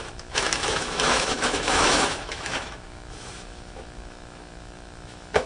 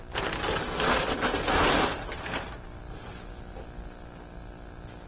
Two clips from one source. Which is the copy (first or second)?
first